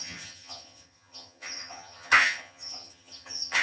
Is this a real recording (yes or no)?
no